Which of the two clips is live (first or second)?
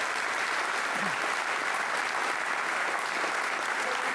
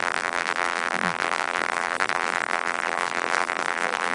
first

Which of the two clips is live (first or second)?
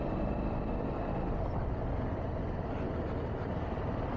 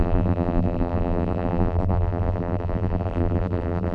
first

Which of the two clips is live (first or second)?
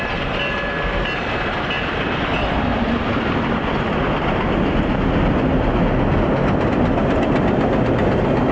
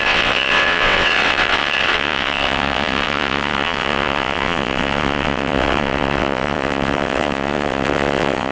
first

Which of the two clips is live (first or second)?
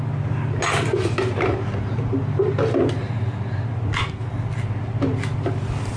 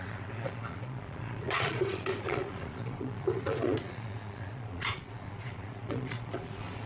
first